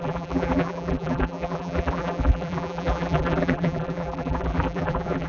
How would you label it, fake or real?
fake